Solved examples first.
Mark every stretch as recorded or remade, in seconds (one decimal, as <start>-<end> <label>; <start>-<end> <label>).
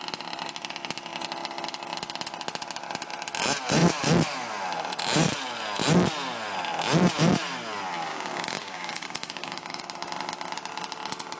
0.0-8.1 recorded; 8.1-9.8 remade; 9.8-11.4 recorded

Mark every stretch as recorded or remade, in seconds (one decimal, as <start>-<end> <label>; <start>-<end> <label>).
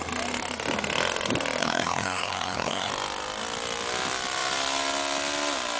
0.0-1.6 recorded; 1.6-2.9 remade; 2.9-5.8 recorded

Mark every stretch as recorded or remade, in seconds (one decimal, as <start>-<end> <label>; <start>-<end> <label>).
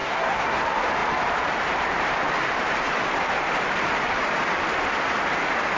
0.0-0.6 remade; 0.6-5.8 recorded